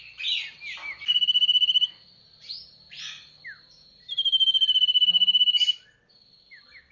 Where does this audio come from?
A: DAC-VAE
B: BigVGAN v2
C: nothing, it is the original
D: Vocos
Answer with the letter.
C